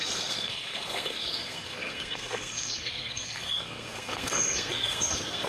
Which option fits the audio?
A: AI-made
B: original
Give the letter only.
A